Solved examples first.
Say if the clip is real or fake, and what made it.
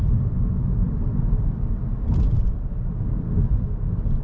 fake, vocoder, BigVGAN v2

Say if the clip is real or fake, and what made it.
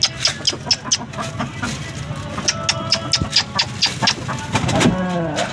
real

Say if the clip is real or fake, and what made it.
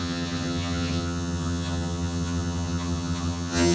fake, vocoder, HiFi-GAN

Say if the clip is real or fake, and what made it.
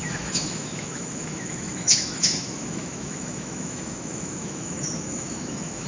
fake, autoencoder, DAC-VAE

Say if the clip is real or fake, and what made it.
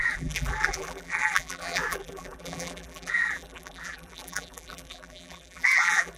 fake, vocoder, BigVGAN v2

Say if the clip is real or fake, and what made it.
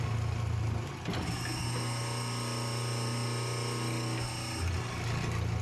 real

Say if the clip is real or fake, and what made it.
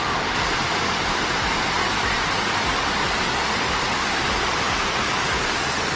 fake, vocoder, BigVGAN v2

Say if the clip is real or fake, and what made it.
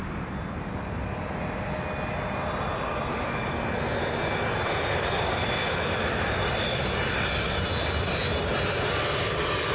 real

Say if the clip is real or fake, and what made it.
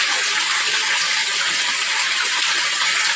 real